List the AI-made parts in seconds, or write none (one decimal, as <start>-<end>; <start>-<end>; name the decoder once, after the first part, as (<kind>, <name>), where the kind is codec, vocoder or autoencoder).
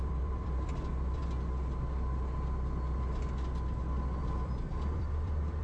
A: 0.0-1.2 (vocoder, BigVGAN v2); 4.2-5.6